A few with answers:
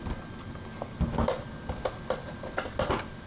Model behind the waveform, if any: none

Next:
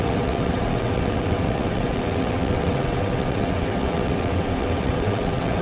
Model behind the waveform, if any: vocoder, WaveNeXt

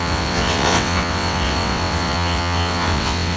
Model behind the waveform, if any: vocoder, WaveNeXt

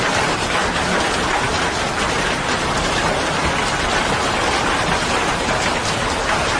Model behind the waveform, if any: none